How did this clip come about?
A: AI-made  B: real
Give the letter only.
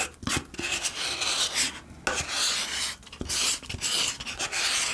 B